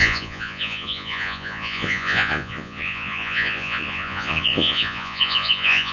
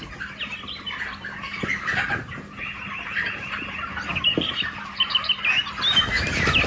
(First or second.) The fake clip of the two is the first